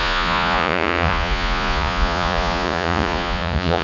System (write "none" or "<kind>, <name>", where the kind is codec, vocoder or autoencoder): vocoder, Vocos